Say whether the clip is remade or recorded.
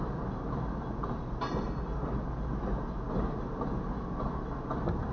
recorded